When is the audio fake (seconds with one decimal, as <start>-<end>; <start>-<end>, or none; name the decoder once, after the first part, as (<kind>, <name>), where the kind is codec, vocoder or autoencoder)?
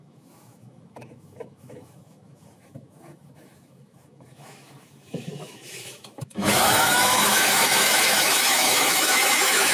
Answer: 0.0-9.7 (autoencoder, DAC-VAE)